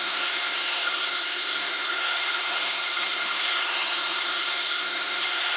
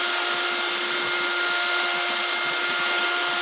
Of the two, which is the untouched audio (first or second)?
second